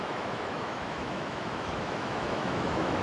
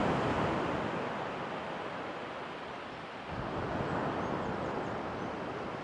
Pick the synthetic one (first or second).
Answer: first